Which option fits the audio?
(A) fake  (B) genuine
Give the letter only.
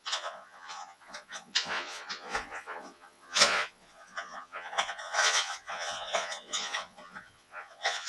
A